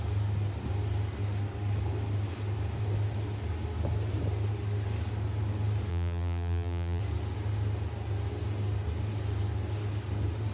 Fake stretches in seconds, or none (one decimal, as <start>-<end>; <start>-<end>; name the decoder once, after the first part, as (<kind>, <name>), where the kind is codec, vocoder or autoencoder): 5.9-7.0 (vocoder, BigVGAN v2)